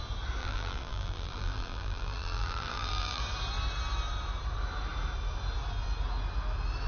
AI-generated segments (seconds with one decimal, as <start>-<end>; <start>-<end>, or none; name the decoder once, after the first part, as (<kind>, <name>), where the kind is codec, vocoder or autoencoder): 0.4-3.2 (vocoder, BigVGAN v2)